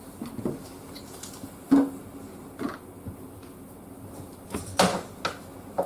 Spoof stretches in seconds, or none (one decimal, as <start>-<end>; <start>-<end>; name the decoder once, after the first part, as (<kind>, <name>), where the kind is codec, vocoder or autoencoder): none